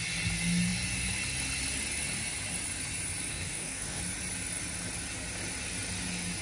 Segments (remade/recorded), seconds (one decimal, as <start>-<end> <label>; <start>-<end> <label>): 0.0-3.3 recorded; 3.3-4.0 remade; 4.0-6.4 recorded